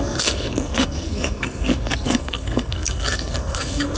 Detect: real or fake fake